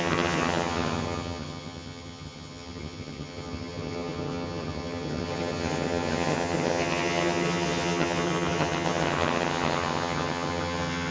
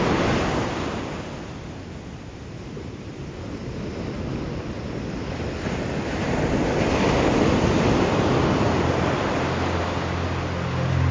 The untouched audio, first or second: second